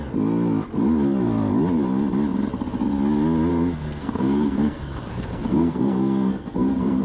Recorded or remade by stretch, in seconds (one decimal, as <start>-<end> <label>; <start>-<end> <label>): 0.0-3.5 recorded; 3.5-7.0 remade